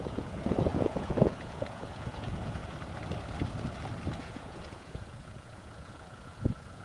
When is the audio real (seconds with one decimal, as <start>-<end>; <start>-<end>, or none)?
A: 2.6-4.2